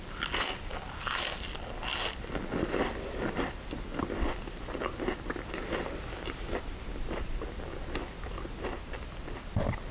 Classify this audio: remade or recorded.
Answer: recorded